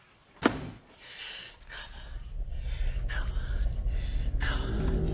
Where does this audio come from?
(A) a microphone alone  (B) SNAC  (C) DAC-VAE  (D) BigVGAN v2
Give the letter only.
A